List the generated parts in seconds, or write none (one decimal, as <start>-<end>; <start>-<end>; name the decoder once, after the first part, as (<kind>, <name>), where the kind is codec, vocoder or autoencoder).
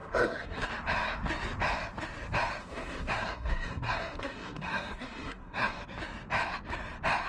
0.0-0.7 (codec, SNAC); 2.6-5.8